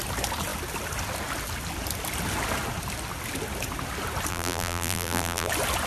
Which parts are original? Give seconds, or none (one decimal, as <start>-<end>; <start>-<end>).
0.0-4.3; 5.5-5.9